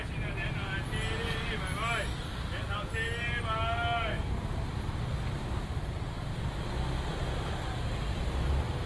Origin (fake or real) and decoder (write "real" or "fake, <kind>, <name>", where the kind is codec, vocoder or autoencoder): real